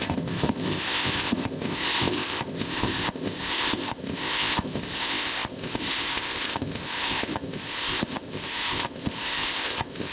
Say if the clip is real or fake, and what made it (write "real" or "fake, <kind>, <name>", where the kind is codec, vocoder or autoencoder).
fake, codec, ZipCodec